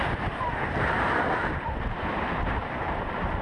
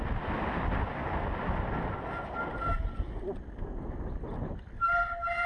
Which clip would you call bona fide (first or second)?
second